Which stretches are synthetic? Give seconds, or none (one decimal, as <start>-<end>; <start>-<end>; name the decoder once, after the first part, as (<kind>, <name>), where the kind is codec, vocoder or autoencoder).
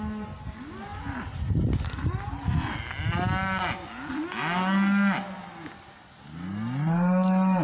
none